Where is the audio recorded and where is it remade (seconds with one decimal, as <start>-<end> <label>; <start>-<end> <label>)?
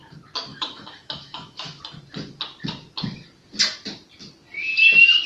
0.0-0.5 recorded; 0.5-1.8 remade; 1.8-5.3 recorded